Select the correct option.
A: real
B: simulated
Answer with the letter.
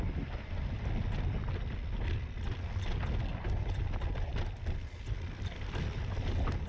A